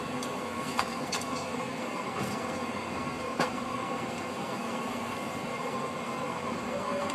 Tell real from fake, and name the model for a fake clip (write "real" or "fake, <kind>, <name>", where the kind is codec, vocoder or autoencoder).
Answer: fake, codec, SNAC